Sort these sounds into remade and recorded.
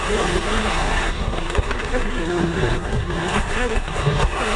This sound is remade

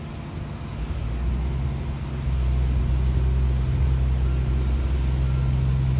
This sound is recorded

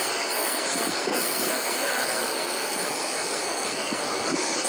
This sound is remade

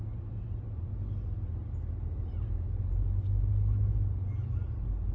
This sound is recorded